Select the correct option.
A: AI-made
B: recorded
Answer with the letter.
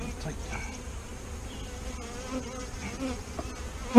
B